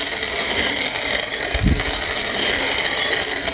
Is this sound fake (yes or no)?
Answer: no